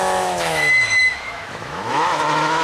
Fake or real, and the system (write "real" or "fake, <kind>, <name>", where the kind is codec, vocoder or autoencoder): fake, autoencoder, DAC-VAE